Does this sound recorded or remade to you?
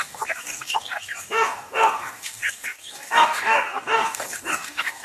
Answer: remade